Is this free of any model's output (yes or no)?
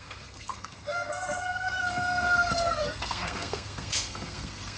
no